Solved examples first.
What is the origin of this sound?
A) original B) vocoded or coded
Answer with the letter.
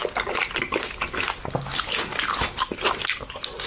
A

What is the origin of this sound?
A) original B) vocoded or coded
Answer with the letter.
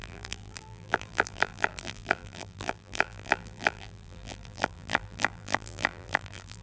B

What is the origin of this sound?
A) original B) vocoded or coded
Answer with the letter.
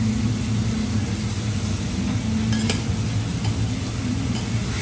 A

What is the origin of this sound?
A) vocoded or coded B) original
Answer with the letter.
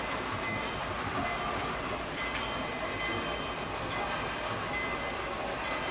B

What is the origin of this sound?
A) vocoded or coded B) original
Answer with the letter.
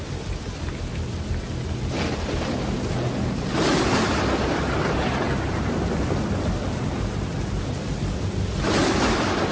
B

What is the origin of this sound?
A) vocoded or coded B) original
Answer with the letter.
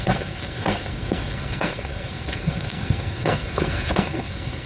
A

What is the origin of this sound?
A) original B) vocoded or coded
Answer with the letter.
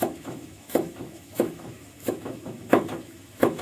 B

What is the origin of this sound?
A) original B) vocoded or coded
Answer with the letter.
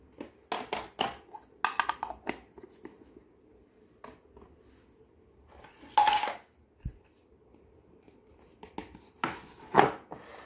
A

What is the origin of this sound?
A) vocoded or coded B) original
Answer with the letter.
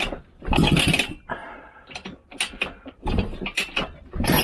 A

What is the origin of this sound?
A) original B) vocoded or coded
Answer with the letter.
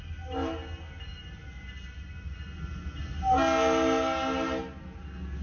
A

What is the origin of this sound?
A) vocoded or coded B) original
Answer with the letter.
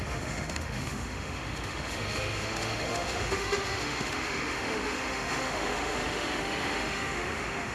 A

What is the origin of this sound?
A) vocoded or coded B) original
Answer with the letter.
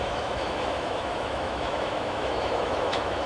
A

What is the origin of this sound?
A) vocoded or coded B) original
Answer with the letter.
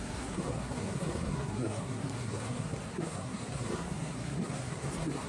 A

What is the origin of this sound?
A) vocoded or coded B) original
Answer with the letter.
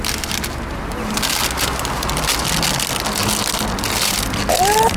B